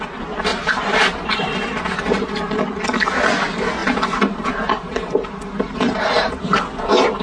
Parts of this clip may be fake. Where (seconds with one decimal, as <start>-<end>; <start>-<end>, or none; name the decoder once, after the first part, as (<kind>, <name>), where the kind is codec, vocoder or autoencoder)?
0.5-2.2 (vocoder, BigVGAN v2); 3.8-6.6